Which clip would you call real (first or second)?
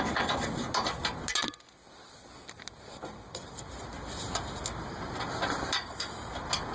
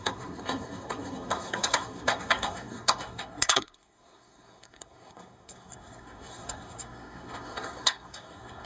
first